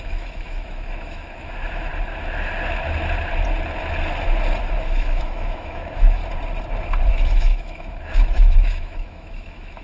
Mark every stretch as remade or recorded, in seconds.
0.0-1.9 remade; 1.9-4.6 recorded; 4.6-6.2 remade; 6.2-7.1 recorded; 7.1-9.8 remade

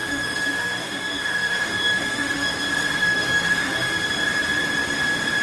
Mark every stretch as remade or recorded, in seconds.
0.0-2.5 remade; 2.5-3.0 recorded; 3.0-4.1 remade; 4.1-5.4 recorded

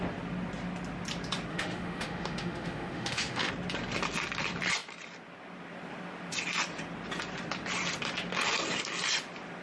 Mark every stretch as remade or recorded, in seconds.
0.0-1.5 recorded; 1.5-3.5 remade; 3.5-9.6 recorded

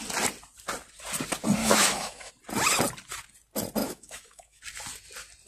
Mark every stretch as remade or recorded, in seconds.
0.0-1.6 recorded; 1.6-2.3 remade; 2.3-3.8 recorded; 3.8-4.6 remade; 4.6-5.5 recorded

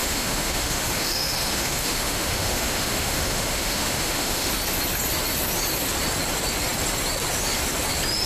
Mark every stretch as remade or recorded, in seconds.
0.0-4.5 remade; 4.5-8.3 recorded

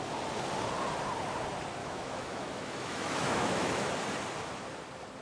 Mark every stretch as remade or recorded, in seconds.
0.0-1.8 recorded; 1.8-3.9 remade; 3.9-5.2 recorded

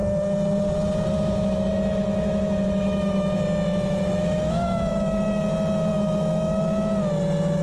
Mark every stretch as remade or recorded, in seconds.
0.0-1.7 recorded; 1.7-5.4 remade; 5.4-5.9 recorded; 5.9-6.6 remade; 6.6-7.6 recorded